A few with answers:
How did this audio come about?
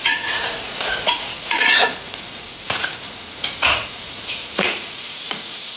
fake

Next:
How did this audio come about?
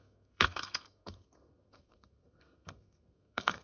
fake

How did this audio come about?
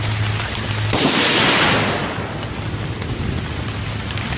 real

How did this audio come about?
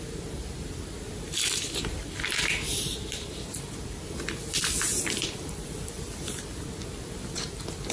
fake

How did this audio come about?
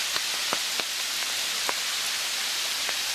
real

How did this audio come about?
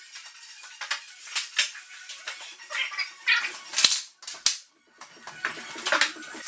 real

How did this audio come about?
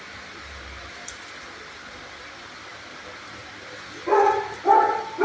real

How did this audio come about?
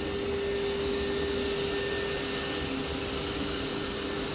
real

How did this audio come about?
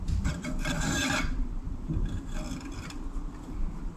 fake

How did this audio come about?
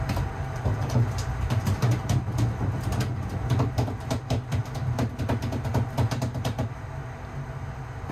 real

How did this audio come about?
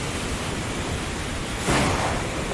real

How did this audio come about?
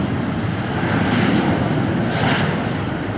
real